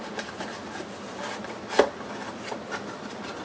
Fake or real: real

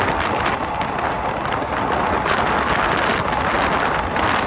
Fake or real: real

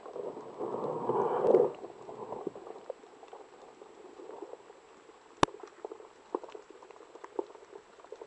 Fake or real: real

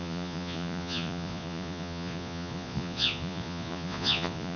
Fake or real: fake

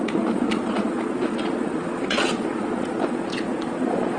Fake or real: fake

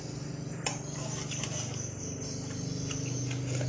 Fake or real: real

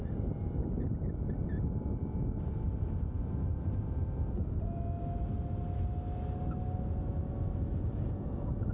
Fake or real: real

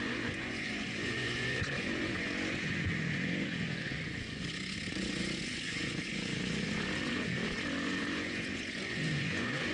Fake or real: fake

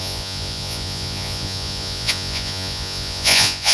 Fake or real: fake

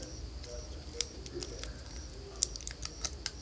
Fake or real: real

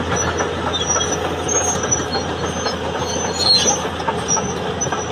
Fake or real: real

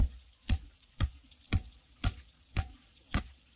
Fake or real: fake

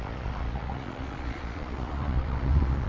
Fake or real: fake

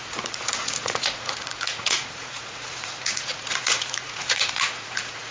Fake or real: fake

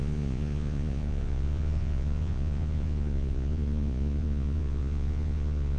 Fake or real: fake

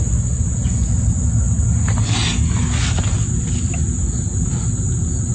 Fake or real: real